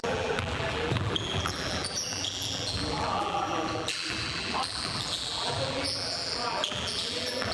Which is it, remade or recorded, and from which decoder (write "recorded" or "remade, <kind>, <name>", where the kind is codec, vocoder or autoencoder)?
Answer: remade, vocoder, BigVGAN v2